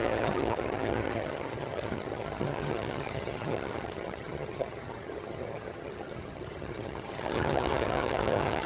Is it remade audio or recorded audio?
remade